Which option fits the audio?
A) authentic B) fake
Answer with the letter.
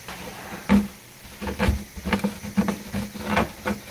A